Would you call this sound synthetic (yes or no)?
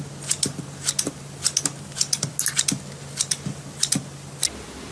no